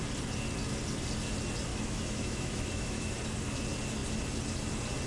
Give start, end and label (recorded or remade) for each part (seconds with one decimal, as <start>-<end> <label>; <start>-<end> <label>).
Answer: 0.0-1.7 recorded; 1.7-3.1 remade; 3.1-5.1 recorded